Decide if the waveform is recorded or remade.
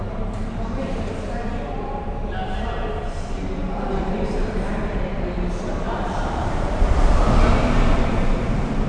remade